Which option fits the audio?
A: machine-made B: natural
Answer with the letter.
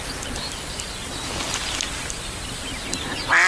B